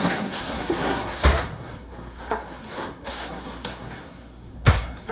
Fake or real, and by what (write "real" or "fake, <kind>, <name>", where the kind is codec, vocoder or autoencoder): fake, codec, SNAC